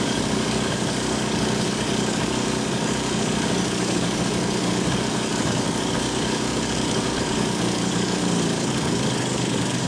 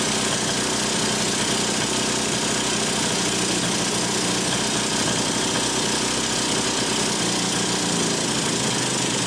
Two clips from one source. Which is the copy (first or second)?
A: first